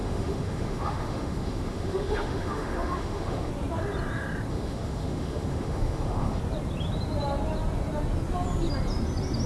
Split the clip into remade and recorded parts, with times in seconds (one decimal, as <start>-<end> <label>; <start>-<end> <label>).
0.0-3.5 remade; 3.5-4.5 recorded; 4.5-6.4 remade; 6.4-9.5 recorded